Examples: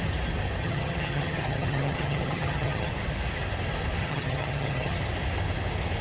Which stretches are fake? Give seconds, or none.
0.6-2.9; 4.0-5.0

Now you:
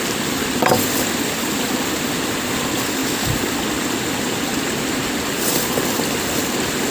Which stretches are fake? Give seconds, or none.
none